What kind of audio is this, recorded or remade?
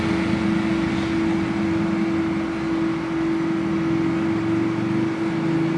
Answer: recorded